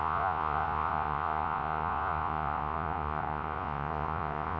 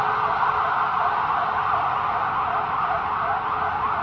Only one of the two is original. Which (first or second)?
second